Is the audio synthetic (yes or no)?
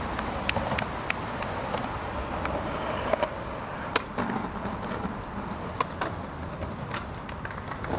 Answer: no